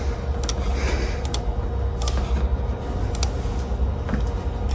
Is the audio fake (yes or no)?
no